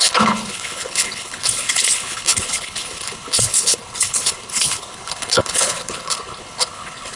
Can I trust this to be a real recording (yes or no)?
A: no